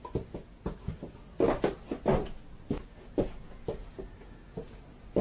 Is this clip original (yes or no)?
yes